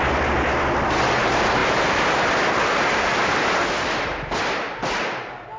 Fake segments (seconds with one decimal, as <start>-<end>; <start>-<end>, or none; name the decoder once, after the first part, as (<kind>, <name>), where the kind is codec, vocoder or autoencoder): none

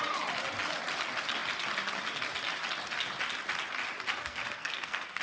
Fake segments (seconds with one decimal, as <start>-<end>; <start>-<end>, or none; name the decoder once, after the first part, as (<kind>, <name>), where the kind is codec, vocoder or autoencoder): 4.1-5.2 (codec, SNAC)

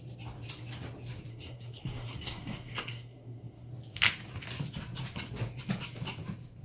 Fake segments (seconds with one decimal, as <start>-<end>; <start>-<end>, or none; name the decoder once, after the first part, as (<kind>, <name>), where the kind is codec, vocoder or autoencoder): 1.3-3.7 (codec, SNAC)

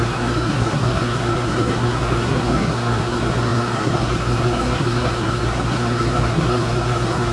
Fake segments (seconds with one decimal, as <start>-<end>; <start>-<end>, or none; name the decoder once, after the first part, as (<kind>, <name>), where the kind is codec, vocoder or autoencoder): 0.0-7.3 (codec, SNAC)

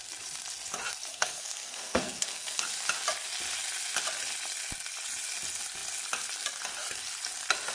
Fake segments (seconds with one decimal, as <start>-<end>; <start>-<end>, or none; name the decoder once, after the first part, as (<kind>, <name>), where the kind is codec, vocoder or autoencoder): 1.1-2.6 (codec, SNAC)

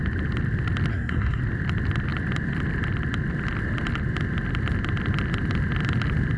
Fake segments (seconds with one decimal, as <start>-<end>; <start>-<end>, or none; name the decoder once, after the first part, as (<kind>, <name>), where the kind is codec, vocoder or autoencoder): 0.9-1.4 (codec, SNAC)